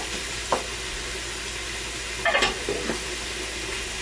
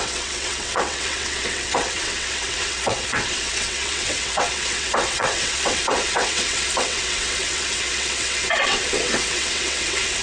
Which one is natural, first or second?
first